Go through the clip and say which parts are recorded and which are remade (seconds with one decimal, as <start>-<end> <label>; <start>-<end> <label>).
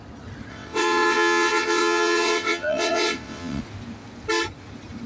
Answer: 0.0-0.5 recorded; 0.5-3.6 remade; 3.6-5.1 recorded